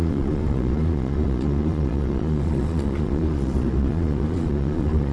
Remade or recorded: remade